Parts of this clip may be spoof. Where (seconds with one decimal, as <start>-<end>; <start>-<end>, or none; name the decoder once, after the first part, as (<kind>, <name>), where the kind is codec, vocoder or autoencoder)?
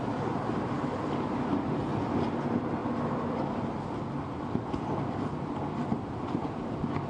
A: none